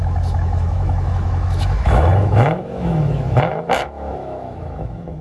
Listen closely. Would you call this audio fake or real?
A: fake